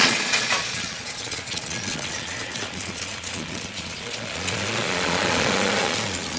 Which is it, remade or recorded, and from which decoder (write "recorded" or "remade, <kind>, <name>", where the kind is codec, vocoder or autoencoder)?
remade, vocoder, Vocos